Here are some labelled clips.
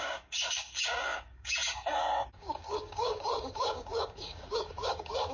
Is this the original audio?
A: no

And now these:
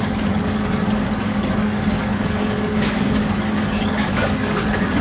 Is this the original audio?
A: no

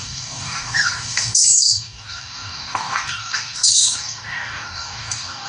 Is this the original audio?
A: no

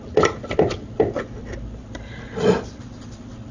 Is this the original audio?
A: yes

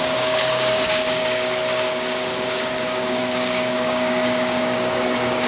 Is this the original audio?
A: no